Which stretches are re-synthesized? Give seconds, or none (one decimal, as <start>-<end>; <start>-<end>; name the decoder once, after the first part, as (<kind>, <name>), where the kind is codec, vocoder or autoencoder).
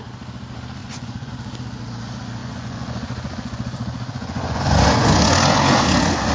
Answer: 0.8-1.3 (vocoder, Vocos); 2.4-6.3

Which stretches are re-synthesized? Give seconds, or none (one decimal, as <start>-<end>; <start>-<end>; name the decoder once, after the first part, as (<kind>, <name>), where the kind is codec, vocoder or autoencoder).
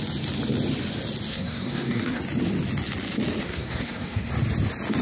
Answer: 1.3-2.2 (codec, SNAC); 3.4-4.3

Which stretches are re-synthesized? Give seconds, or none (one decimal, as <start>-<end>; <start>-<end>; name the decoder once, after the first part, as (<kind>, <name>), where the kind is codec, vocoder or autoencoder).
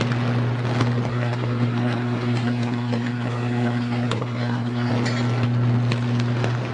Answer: 1.1-4.9 (codec, SNAC)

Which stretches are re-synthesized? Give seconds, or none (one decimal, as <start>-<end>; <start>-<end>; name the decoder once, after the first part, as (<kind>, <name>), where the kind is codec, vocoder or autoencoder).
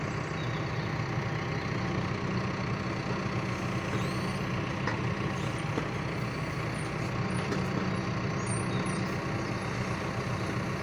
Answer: 4.9-6.4 (vocoder, BigVGAN v2)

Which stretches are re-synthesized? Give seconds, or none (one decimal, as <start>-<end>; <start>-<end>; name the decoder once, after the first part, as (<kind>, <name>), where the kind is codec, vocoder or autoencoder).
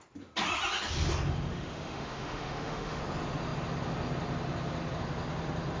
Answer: 1.5-3.0 (autoencoder, DAC-VAE)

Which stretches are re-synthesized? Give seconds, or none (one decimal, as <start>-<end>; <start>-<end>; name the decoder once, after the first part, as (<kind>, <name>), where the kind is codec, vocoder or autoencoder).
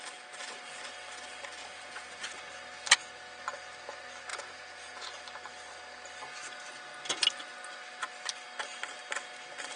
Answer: 1.6-2.4 (vocoder, Vocos); 4.3-5.2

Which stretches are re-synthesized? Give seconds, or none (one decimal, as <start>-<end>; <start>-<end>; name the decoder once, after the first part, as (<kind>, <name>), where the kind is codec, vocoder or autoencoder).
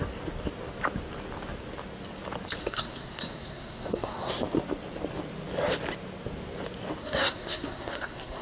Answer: 2.6-4.3 (codec, SNAC); 7.0-8.4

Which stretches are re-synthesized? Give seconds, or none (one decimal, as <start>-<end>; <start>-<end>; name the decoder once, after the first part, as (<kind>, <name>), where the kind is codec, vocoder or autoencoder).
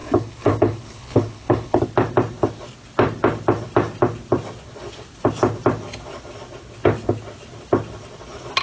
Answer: 0.0-1.8 (codec, HILCodec)